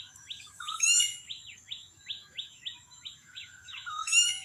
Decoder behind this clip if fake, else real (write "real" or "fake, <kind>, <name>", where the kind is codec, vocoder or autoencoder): fake, autoencoder, DAC-VAE